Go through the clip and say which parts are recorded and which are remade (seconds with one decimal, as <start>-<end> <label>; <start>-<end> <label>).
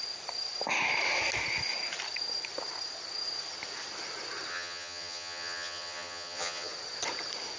0.0-4.5 recorded; 4.5-6.7 remade; 6.7-7.6 recorded